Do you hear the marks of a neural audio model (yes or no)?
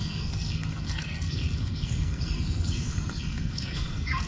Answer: yes